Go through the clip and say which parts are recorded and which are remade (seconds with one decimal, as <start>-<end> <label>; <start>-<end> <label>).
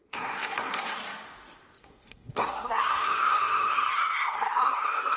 0.0-1.0 remade; 1.0-1.8 recorded; 1.8-5.2 remade